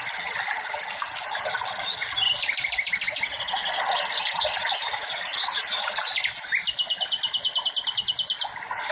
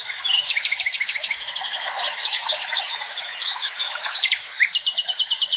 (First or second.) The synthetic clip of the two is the second